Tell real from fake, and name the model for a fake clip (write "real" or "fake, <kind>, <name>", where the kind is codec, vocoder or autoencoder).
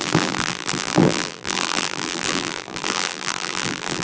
fake, vocoder, BigVGAN v2